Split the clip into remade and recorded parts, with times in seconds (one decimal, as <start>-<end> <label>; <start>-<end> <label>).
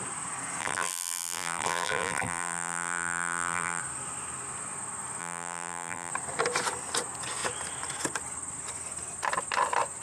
0.0-0.6 recorded; 0.6-3.8 remade; 3.8-5.2 recorded; 5.2-6.1 remade; 6.1-10.0 recorded